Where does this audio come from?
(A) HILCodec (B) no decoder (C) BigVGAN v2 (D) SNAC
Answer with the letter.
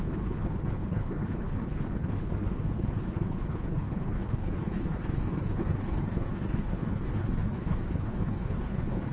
A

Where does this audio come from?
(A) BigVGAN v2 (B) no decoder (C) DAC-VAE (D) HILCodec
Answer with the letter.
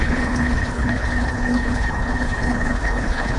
D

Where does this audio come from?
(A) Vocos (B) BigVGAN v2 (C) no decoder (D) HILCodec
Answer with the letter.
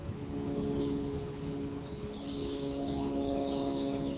D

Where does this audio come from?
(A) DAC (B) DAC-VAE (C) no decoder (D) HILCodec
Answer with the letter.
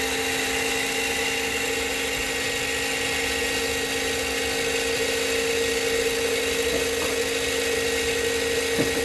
C